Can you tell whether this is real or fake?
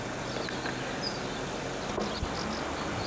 real